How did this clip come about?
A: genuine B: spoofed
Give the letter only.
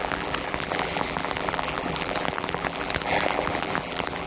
B